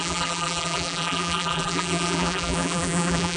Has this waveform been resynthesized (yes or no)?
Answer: yes